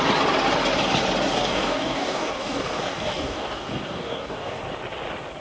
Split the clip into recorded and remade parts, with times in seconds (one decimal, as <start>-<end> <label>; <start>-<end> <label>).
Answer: 0.0-1.4 recorded; 1.4-4.6 remade; 4.6-5.4 recorded